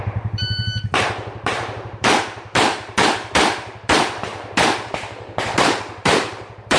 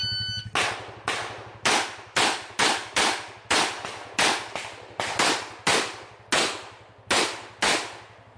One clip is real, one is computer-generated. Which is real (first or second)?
second